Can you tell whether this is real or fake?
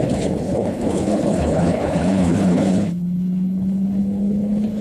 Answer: fake